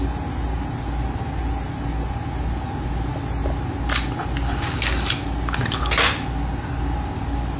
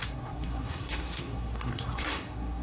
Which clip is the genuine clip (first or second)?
first